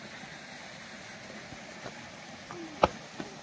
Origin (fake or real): real